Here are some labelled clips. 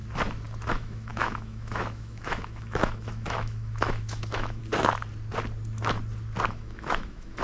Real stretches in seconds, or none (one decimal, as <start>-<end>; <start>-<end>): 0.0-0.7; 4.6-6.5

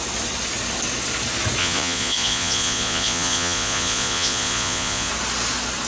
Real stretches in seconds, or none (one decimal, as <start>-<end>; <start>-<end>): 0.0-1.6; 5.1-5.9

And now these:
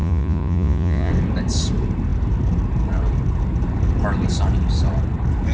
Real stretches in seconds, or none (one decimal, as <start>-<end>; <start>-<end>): 1.1-5.5

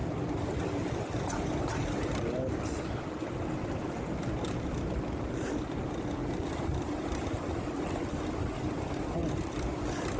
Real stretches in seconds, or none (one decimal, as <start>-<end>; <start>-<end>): 0.0-10.2